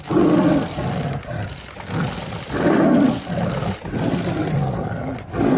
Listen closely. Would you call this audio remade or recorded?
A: recorded